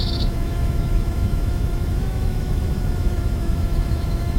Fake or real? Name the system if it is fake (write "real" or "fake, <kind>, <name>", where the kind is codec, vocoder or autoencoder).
fake, autoencoder, DAC-VAE